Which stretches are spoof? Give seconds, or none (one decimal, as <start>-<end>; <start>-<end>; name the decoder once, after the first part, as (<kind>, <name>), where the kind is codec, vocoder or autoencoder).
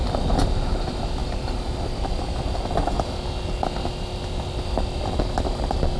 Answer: none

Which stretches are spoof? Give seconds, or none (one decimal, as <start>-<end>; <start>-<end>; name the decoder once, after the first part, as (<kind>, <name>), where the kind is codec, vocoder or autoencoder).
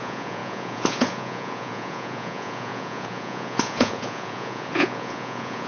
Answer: 0.0-5.7 (vocoder, Vocos)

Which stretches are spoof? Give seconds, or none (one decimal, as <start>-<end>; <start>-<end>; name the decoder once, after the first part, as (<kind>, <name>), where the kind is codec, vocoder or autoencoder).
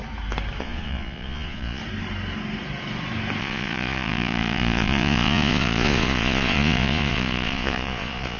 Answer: 0.6-1.8 (vocoder, Vocos); 3.4-8.4